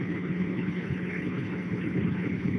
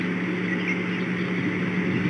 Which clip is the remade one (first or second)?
first